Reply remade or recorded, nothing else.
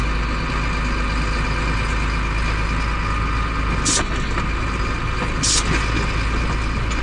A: recorded